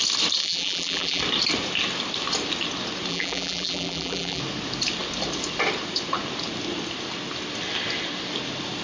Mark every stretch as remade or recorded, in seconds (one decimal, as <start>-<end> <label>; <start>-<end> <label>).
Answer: 0.0-0.4 recorded; 0.4-1.2 remade; 1.2-3.1 recorded; 3.1-4.4 remade; 4.4-8.8 recorded